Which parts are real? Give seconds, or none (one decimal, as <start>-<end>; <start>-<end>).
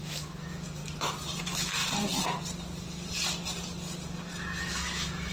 0.8-1.4; 1.8-4.6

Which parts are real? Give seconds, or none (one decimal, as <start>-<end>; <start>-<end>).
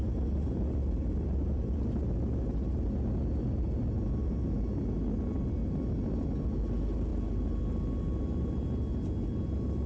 0.0-9.9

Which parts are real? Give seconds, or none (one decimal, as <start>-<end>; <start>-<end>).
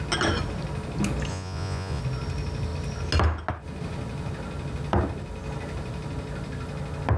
0.0-1.3; 2.0-7.2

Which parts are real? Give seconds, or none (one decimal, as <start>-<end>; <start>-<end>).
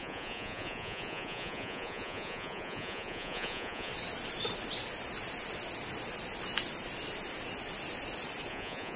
3.9-8.5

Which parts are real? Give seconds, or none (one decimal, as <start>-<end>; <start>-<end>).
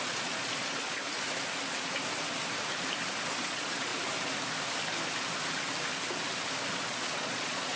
1.0-3.3; 3.9-6.7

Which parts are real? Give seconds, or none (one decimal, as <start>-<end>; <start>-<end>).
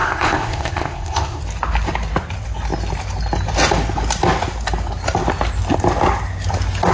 1.4-6.9